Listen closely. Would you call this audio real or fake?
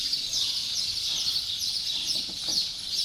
fake